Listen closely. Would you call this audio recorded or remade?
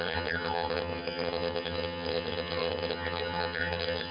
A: remade